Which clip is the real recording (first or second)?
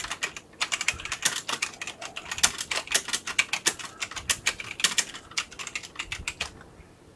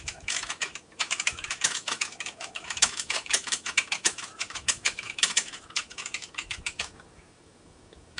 first